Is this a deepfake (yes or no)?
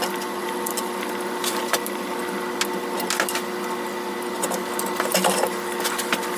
no